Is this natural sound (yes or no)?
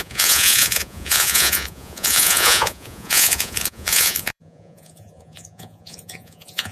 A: no